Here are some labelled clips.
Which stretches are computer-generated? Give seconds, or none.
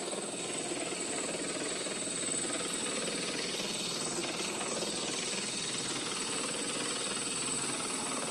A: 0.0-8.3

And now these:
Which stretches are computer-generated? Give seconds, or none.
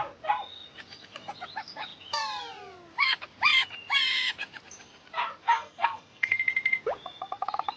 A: 5.4-6.4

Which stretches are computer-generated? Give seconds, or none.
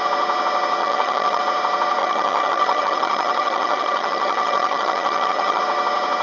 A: 0.8-1.4; 2.0-5.6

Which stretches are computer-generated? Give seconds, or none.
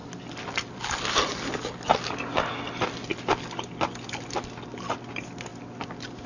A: 0.0-1.4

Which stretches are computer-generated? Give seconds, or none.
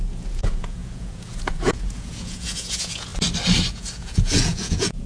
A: 0.0-3.1; 3.7-5.1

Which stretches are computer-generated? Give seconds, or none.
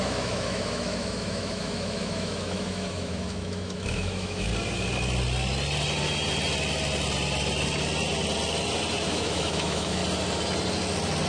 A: 0.0-4.5; 9.1-10.0